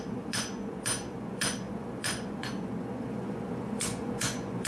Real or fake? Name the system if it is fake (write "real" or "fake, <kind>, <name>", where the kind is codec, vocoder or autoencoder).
fake, vocoder, Vocos